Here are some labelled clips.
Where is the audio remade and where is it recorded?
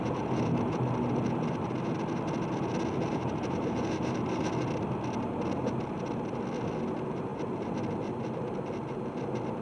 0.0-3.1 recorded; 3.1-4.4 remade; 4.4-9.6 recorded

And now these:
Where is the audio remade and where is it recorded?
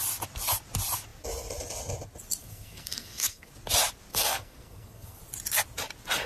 0.0-2.4 recorded; 2.4-3.5 remade; 3.5-4.1 recorded; 4.1-5.2 remade; 5.2-6.3 recorded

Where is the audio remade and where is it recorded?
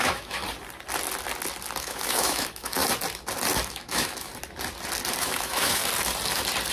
0.0-0.4 remade; 0.4-1.8 recorded; 1.8-2.8 remade; 2.8-3.7 recorded; 3.7-4.3 remade; 4.3-5.2 recorded; 5.2-5.8 remade; 5.8-6.7 recorded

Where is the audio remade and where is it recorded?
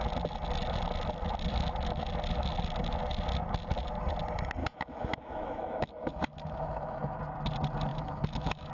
0.0-4.6 recorded; 4.6-7.2 remade; 7.2-7.9 recorded; 7.9-8.7 remade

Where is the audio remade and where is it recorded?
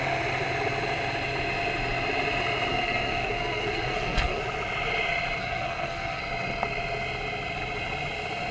0.0-2.7 recorded; 2.7-4.4 remade; 4.4-5.4 recorded; 5.4-6.2 remade; 6.2-8.5 recorded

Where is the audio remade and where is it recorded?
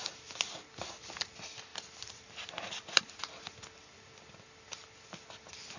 0.0-1.7 recorded; 1.7-3.0 remade; 3.0-5.8 recorded